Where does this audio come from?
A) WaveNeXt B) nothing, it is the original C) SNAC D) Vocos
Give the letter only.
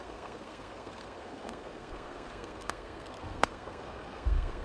C